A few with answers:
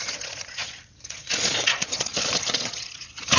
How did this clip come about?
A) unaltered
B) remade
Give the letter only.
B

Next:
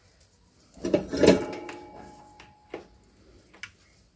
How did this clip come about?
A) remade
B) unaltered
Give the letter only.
B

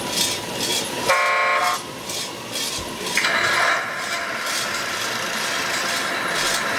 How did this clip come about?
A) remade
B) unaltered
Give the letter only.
B